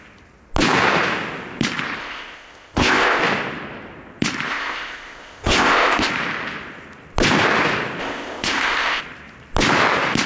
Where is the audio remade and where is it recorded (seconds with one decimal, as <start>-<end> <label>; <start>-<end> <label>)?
0.0-2.0 recorded; 2.0-3.2 remade; 3.2-4.5 recorded; 4.5-6.1 remade; 6.1-8.0 recorded; 8.0-9.0 remade; 9.0-10.3 recorded